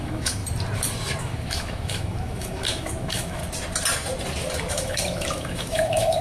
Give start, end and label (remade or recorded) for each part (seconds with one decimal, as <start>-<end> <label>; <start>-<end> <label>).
0.0-0.4 remade; 0.4-1.2 recorded; 1.2-3.4 remade; 3.4-4.7 recorded; 4.7-6.2 remade